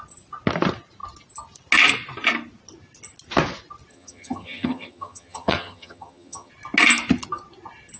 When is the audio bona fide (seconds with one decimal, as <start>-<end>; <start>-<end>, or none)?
0.0-3.9; 6.5-8.0